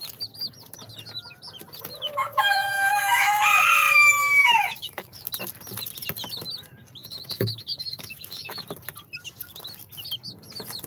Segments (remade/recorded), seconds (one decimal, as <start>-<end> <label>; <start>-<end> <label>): 0.0-2.1 recorded; 2.1-3.4 remade; 3.4-4.2 recorded; 4.2-5.3 remade; 5.3-7.0 recorded; 7.0-8.6 remade; 8.6-10.9 recorded